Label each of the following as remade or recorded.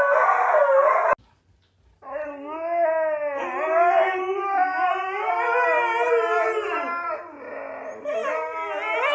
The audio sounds recorded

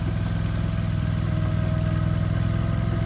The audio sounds recorded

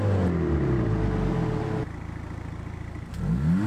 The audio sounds recorded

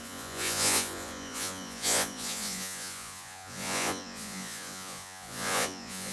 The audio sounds remade